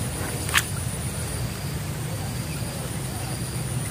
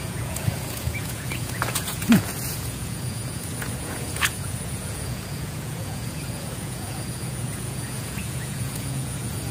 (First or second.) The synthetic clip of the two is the second